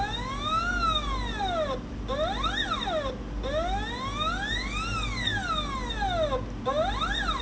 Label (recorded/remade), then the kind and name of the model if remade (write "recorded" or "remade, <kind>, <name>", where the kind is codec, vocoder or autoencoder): recorded